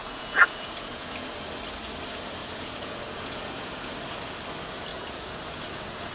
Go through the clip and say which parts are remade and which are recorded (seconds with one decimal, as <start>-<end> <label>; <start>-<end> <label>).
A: 0.0-1.3 remade; 1.3-2.4 recorded; 2.4-3.9 remade; 3.9-4.9 recorded; 4.9-6.1 remade